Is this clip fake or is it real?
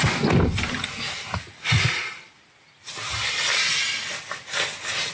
real